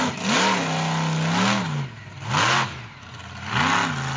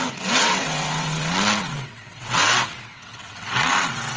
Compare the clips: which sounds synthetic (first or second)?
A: second